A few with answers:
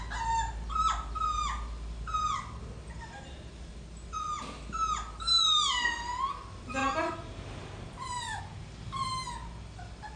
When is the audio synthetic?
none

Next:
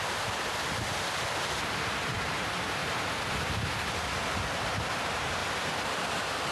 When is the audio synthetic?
0.0-0.6 (vocoder, BigVGAN v2); 2.1-2.8; 4.5-5.4; 5.9-6.5

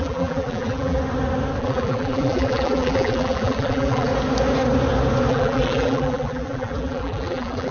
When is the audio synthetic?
0.0-1.0 (vocoder, BigVGAN v2); 1.6-4.1; 5.3-7.7

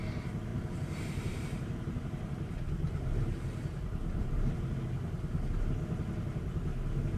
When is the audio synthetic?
0.5-4.8 (vocoder, BigVGAN v2)

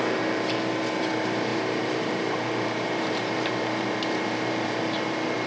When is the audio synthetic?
0.0-5.5 (vocoder, BigVGAN v2)

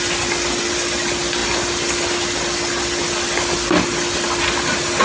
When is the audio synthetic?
none